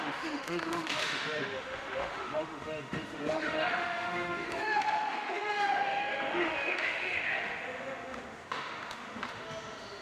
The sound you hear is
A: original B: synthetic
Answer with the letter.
B